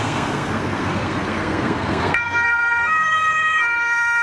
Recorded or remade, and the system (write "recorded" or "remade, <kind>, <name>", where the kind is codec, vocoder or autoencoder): remade, codec, SNAC